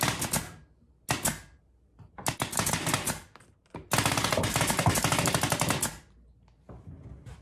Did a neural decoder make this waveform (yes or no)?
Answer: no